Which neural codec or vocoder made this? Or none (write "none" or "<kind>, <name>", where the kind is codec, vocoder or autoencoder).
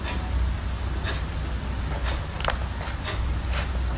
none